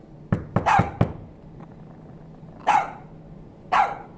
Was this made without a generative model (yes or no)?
yes